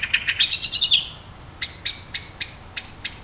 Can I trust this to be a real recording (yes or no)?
yes